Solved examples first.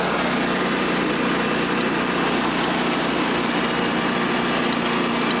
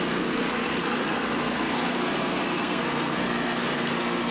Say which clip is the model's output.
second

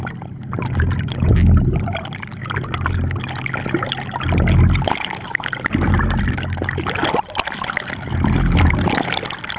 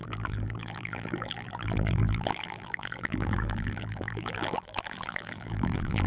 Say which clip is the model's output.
second